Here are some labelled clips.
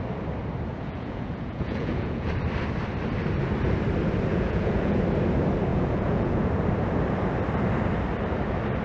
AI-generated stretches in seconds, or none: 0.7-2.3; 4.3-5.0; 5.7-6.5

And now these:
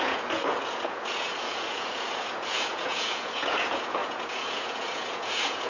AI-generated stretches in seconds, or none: 0.0-5.7